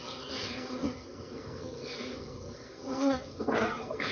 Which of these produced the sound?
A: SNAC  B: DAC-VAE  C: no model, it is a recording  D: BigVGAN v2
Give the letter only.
A